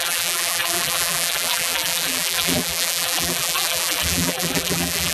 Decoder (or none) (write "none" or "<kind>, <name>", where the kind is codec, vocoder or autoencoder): vocoder, BigVGAN v2